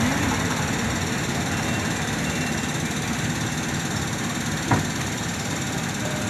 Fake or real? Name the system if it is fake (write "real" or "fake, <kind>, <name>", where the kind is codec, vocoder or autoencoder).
real